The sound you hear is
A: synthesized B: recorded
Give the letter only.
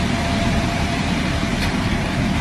A